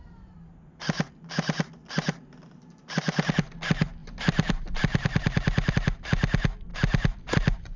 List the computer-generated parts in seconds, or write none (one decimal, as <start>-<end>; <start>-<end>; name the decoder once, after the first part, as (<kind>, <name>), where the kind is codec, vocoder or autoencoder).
4.0-5.7 (vocoder, BigVGAN v2); 6.7-7.8